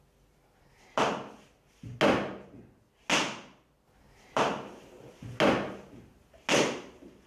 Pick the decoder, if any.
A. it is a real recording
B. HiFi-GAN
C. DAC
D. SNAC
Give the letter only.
A